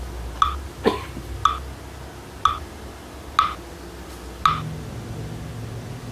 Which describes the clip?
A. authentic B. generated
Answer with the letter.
A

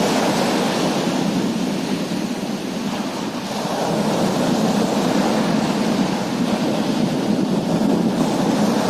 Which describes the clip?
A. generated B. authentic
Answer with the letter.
B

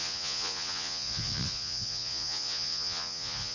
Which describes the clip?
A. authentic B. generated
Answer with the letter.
B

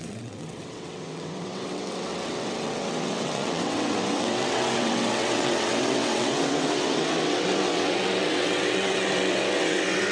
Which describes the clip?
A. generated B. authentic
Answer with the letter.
A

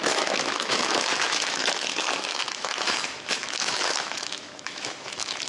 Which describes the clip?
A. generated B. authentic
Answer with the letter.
A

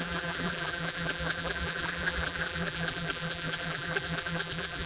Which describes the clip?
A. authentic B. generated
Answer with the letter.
B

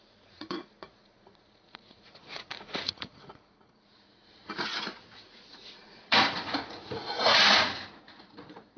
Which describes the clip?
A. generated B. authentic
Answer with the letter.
A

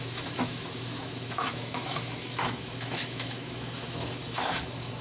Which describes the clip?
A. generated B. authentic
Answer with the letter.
A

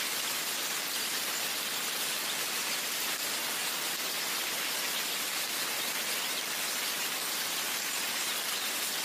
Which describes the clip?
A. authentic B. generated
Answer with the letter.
A